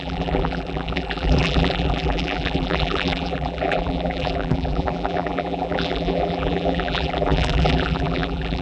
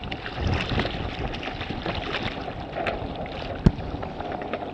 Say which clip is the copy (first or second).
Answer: first